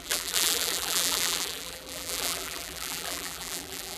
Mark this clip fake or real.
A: fake